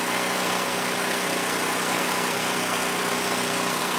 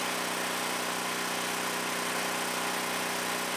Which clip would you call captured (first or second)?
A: second